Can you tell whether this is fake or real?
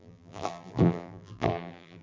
fake